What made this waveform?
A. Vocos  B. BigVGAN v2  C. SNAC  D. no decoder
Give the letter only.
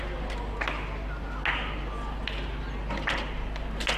D